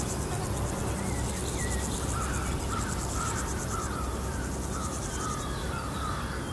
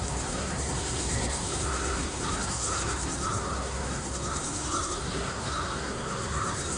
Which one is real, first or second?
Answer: first